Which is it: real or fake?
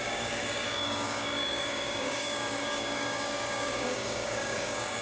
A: fake